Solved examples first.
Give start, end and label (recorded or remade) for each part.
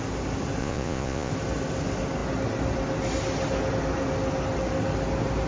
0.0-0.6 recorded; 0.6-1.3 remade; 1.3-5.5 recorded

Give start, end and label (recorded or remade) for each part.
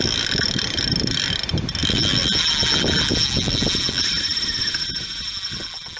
0.0-6.0 recorded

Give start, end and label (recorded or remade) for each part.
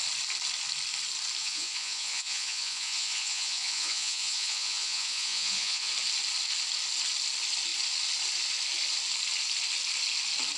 0.0-1.4 recorded; 1.4-5.9 remade; 5.9-10.6 recorded